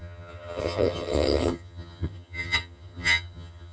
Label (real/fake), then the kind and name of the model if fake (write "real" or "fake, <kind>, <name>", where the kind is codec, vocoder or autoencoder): fake, vocoder, HiFi-GAN